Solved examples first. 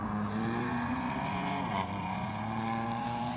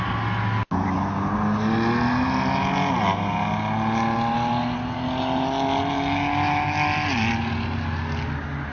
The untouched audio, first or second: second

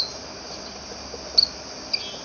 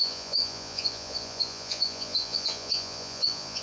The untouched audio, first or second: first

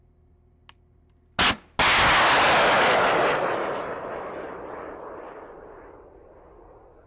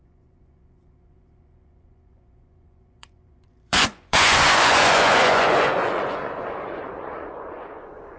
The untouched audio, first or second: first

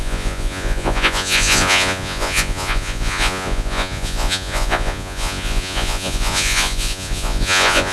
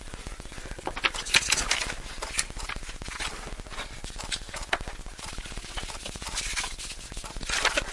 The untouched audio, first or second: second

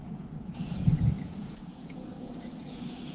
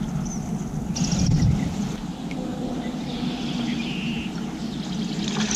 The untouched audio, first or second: second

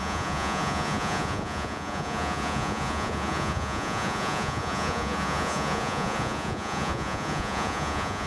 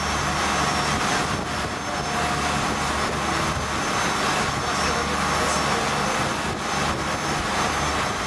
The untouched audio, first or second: second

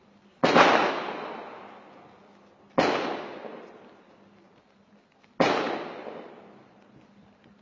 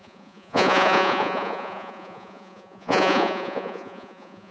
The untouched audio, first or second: first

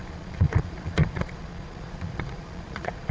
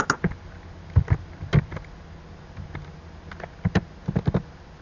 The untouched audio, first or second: second